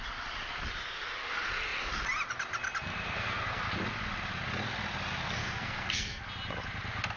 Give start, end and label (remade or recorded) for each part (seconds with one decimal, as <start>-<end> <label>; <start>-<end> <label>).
0.0-2.9 recorded; 2.9-3.6 remade; 3.6-5.4 recorded; 5.4-6.2 remade; 6.2-7.2 recorded